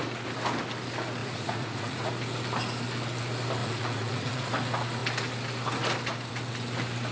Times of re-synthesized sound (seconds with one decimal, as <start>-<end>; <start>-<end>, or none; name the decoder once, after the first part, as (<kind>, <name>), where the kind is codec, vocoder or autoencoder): 1.2-2.1 (vocoder, Vocos); 3.6-4.5